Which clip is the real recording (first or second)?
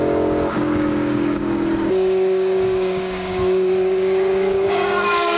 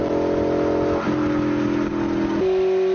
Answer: second